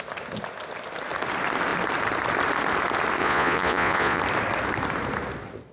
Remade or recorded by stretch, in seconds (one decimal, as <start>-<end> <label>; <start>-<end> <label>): 0.0-3.2 recorded; 3.2-4.2 remade; 4.2-5.7 recorded